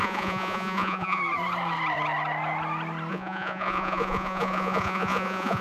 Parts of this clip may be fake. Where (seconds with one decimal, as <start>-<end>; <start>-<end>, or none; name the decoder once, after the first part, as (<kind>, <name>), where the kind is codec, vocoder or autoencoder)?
0.0-1.2 (vocoder, Vocos); 3.1-5.6